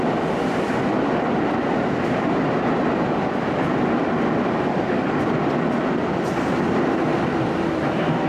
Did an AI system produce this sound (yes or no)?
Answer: no